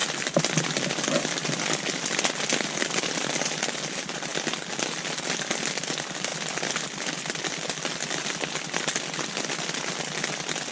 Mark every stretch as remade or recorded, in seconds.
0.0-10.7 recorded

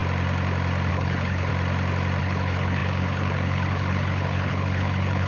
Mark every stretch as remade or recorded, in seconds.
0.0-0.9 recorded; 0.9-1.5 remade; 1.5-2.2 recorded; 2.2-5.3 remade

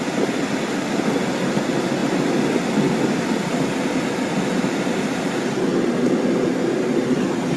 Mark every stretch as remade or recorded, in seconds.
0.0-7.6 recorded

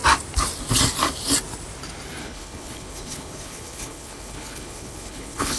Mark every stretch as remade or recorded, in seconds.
0.0-2.2 recorded; 2.2-5.6 remade